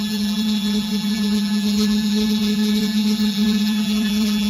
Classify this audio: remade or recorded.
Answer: remade